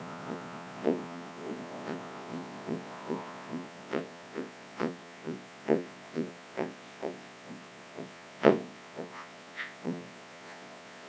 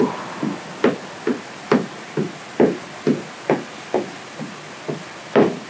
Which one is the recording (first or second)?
second